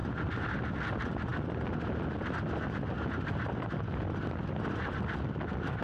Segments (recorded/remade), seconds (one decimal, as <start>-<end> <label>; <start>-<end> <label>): 0.0-5.8 recorded